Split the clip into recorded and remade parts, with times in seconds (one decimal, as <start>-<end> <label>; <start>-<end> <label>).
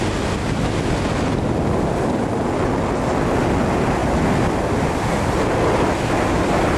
0.0-6.8 recorded